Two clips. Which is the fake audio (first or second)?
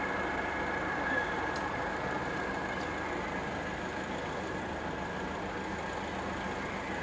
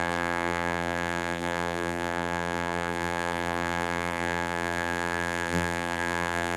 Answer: second